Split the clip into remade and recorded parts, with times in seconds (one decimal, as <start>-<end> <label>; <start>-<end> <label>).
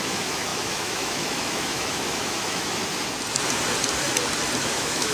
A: 0.0-2.8 remade; 2.8-4.6 recorded; 4.6-5.1 remade